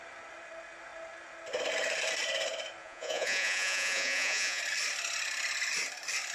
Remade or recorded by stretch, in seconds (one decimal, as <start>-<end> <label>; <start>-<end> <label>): 0.0-2.8 recorded; 2.8-4.6 remade; 4.6-6.3 recorded